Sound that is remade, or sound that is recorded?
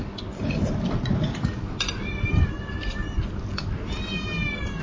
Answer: recorded